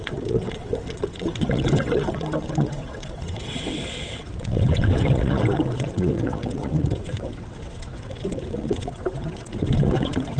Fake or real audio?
fake